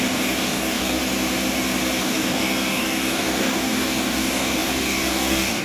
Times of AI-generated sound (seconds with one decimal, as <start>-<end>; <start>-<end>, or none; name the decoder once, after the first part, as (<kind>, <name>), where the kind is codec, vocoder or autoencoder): 0.0-1.0 (codec, DAC); 2.0-5.6